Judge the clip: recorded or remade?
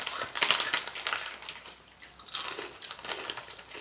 recorded